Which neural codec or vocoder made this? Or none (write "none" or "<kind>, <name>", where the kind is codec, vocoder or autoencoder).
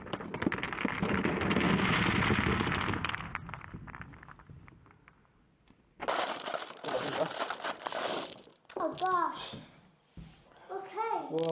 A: none